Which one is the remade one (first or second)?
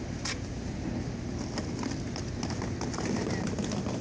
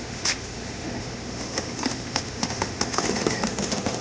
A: second